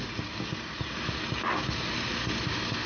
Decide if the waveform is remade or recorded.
recorded